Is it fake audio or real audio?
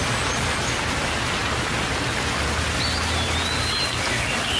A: real